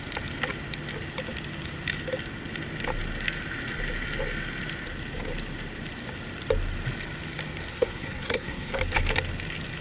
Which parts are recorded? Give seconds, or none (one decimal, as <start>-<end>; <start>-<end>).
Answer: 0.0-7.7; 8.8-9.8